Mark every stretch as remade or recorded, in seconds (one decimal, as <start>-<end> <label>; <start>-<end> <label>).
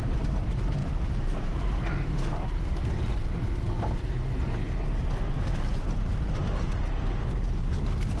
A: 0.0-0.8 recorded; 0.8-3.3 remade; 3.3-8.2 recorded